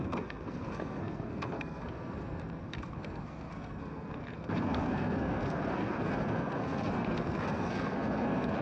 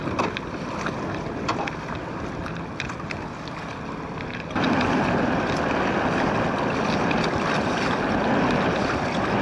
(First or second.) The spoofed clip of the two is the first